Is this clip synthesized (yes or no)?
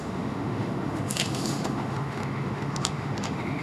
yes